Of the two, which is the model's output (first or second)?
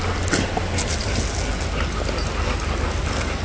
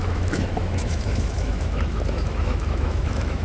second